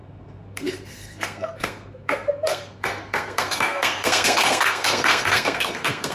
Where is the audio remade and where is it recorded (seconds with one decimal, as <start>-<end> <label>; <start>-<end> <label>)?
0.0-6.1 remade